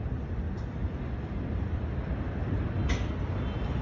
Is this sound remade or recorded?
recorded